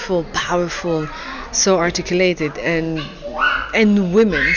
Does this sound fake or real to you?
real